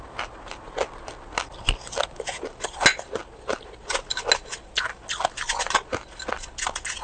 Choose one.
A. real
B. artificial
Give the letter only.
A